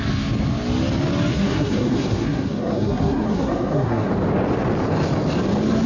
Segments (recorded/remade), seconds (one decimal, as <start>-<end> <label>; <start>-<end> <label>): 0.0-1.3 recorded; 1.3-4.1 remade; 4.1-5.9 recorded